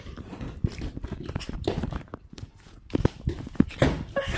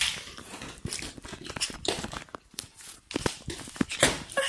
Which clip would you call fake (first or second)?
first